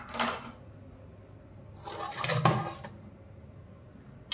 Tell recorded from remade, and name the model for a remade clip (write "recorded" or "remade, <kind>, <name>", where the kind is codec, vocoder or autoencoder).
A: recorded